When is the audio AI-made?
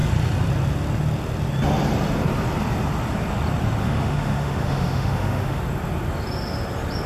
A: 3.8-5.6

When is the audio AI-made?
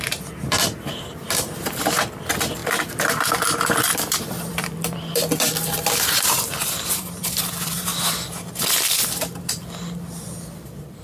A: 0.0-2.6; 3.8-7.9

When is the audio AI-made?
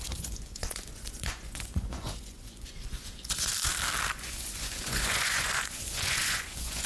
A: 0.0-3.5; 4.1-6.9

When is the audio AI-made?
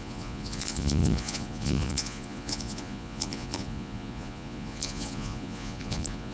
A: 0.0-6.3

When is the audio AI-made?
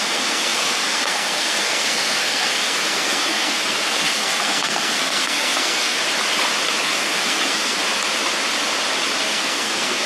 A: 0.0-6.0; 6.8-7.8; 9.2-10.1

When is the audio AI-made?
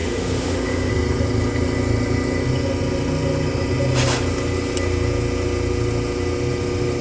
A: 0.0-0.9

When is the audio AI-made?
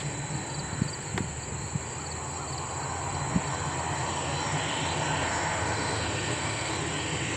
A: 5.2-6.7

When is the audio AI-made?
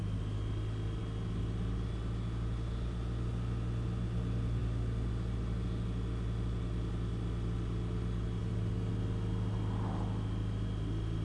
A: none